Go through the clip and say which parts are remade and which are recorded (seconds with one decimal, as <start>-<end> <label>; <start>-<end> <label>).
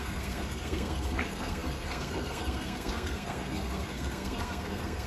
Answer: 0.0-5.1 remade